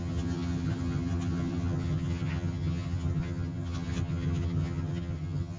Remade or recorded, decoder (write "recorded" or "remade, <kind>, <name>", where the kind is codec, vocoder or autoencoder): remade, vocoder, HiFi-GAN